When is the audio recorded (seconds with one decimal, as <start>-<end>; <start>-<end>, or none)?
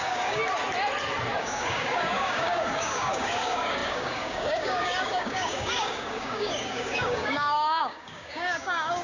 0.4-1.4